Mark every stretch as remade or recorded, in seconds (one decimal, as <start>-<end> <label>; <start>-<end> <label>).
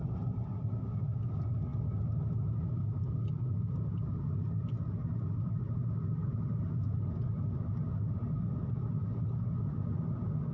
0.0-10.5 recorded